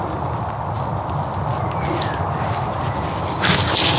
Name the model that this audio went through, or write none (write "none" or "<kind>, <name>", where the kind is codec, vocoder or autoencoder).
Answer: none